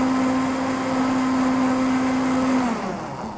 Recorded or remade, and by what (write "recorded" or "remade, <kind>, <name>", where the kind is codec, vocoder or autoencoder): recorded